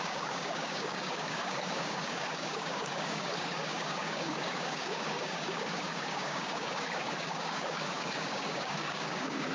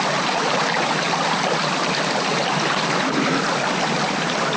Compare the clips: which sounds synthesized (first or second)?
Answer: first